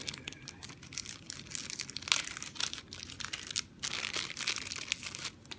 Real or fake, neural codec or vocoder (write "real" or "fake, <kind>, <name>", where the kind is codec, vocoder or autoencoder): real